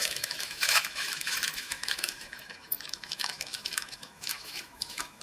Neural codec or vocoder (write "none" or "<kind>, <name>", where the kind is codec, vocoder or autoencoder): autoencoder, DAC-VAE